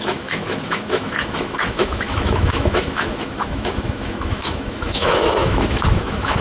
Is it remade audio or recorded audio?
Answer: remade